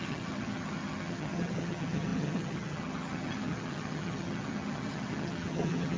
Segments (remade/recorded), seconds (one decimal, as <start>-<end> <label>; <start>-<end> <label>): 0.0-6.0 remade